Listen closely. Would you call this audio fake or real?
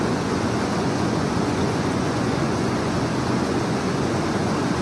fake